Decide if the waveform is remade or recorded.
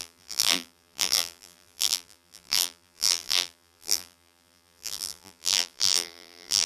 remade